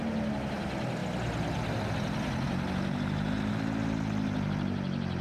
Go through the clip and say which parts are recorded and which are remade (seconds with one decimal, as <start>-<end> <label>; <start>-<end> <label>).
0.0-5.2 recorded